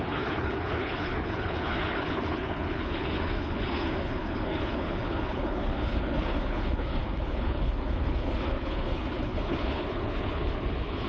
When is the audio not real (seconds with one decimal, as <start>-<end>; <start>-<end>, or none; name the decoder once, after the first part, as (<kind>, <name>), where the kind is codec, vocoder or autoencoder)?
0.0-11.1 (codec, HILCodec)